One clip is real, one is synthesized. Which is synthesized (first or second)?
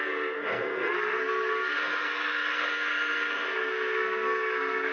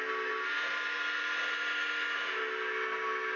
first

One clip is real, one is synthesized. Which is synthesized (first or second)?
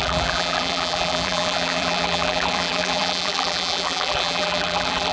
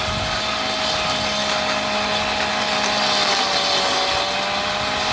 first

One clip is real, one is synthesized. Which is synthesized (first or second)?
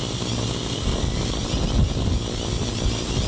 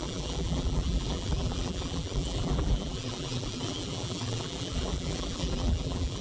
second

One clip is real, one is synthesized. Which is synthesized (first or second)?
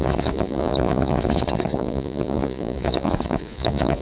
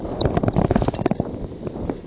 first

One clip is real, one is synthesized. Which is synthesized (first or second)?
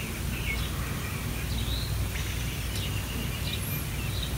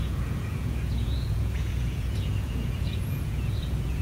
second